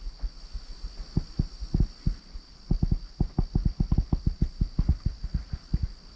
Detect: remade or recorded recorded